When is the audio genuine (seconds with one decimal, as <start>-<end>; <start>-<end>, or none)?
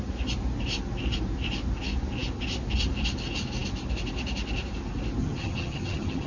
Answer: 0.0-5.2